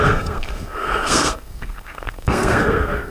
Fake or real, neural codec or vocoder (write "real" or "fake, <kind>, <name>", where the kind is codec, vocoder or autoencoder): fake, codec, SNAC